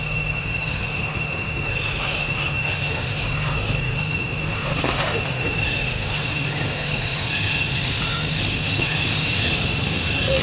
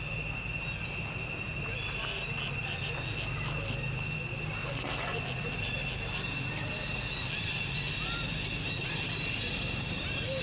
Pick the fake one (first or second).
first